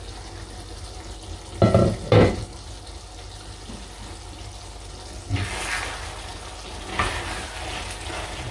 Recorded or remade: recorded